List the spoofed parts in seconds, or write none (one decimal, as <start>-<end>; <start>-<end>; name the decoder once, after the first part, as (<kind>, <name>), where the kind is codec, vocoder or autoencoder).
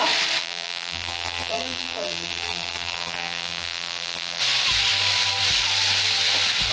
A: 0.4-4.4 (vocoder, BigVGAN v2)